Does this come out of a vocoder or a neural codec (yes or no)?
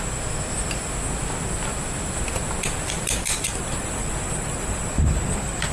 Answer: no